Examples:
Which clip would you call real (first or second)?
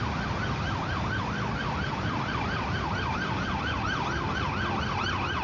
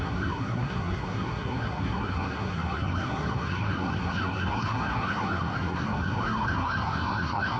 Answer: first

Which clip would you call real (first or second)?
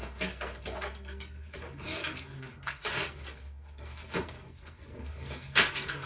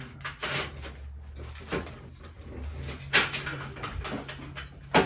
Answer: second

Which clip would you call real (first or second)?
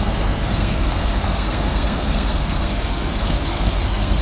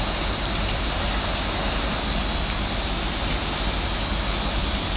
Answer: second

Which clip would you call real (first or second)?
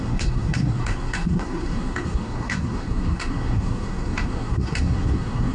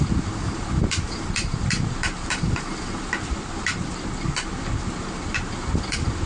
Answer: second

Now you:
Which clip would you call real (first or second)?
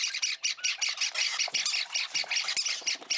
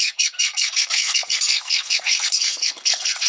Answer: first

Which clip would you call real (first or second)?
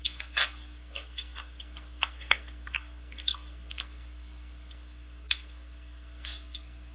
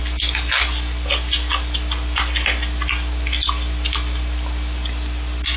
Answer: second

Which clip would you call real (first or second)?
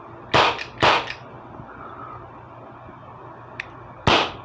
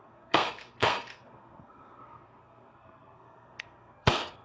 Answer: first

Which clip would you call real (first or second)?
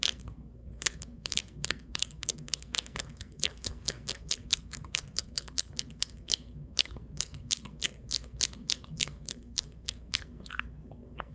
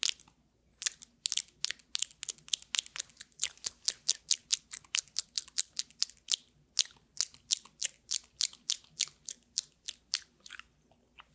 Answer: second